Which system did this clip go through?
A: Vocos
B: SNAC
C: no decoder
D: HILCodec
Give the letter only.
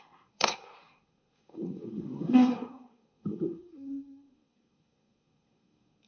B